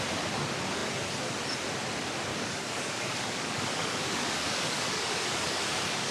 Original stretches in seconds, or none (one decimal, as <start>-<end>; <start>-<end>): 0.0-2.3